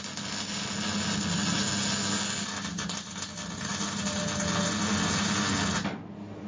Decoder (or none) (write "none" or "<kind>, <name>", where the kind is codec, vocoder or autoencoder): none